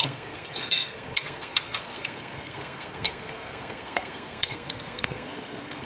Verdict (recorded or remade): remade